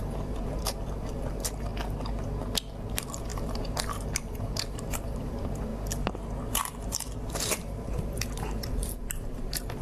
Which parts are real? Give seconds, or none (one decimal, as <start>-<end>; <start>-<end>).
1.7-2.9; 5.7-7.3